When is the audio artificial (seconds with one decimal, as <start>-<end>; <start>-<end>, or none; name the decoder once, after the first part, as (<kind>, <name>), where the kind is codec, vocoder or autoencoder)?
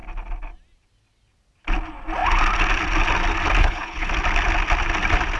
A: 3.6-4.1 (codec, HILCodec)